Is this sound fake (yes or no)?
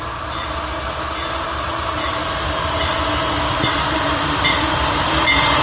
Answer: no